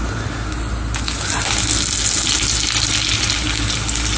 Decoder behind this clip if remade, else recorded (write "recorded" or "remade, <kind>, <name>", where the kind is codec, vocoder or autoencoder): recorded